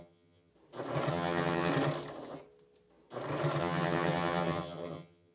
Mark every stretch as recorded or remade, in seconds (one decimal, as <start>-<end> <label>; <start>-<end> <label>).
0.0-0.5 remade; 0.5-1.1 recorded; 1.1-1.7 remade; 1.7-3.6 recorded; 3.6-5.3 remade